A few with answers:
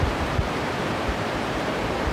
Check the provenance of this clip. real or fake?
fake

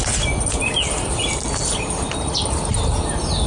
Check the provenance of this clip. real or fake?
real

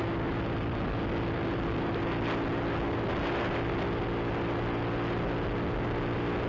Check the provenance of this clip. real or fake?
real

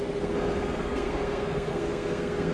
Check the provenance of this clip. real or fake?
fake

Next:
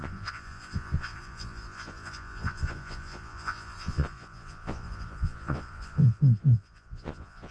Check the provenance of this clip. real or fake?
fake